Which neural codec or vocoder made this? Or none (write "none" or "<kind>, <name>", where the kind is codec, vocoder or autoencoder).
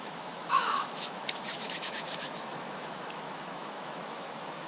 autoencoder, DAC-VAE